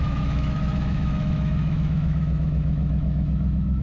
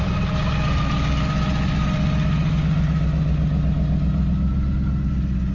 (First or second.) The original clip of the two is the second